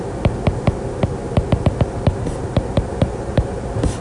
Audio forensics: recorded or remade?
recorded